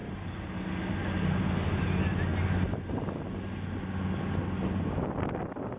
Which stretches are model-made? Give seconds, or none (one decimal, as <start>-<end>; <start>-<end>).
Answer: 0.0-1.2